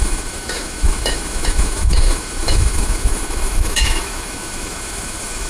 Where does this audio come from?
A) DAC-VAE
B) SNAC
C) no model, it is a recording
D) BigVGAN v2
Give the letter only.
A